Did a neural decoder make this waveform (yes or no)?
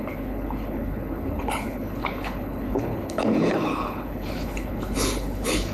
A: yes